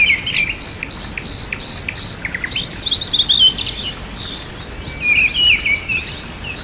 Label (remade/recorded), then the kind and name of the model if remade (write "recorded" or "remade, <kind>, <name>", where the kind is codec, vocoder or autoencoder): recorded